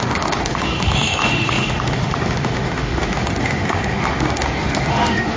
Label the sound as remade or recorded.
remade